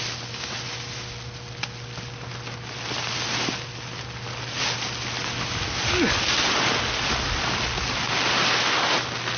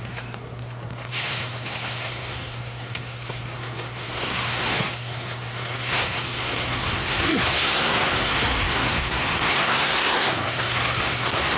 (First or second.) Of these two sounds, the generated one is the second